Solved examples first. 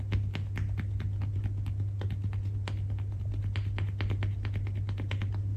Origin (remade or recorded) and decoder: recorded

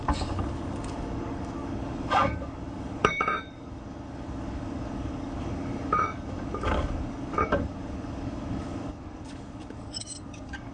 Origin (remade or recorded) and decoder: remade, codec, DAC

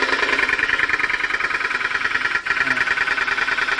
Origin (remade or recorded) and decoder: recorded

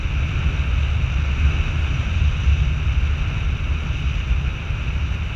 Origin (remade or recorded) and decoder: recorded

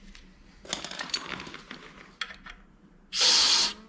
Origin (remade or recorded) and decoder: recorded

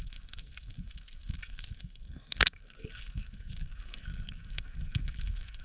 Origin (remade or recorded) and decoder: remade, codec, SNAC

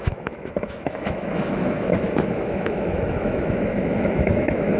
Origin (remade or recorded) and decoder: remade, autoencoder, DAC-VAE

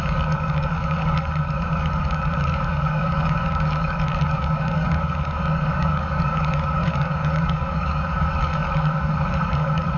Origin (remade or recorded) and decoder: remade, codec, DAC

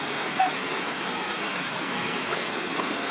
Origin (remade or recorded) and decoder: remade, codec, SNAC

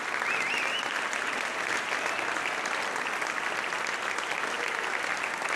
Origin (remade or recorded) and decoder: recorded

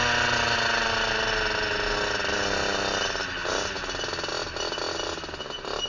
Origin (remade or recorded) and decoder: recorded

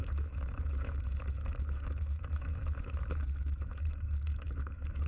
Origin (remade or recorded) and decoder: remade, autoencoder, DAC-VAE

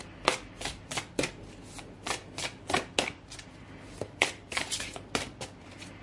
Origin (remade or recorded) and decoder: recorded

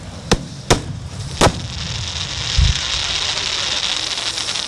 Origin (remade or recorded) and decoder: recorded